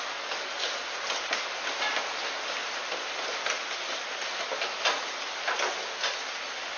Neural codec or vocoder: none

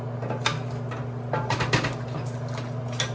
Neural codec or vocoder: none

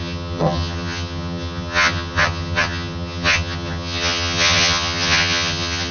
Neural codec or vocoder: vocoder, HiFi-GAN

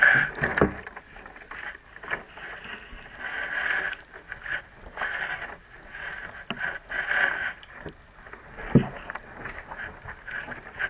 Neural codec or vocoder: none